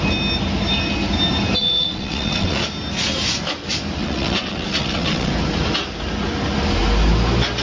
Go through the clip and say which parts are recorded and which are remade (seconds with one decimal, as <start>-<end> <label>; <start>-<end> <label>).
0.0-1.6 recorded; 1.6-2.6 remade; 2.6-4.0 recorded; 4.0-5.3 remade; 5.3-7.6 recorded